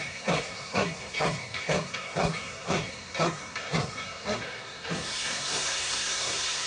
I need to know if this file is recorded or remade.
remade